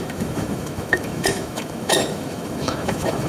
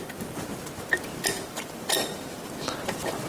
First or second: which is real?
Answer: second